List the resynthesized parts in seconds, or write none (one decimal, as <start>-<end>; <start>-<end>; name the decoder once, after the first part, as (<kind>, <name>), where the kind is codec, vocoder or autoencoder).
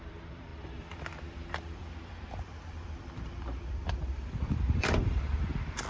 0.0-5.9 (vocoder, BigVGAN v2)